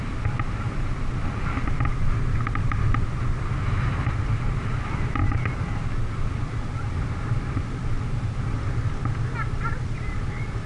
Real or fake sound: real